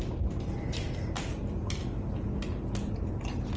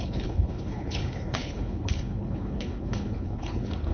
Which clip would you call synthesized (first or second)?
second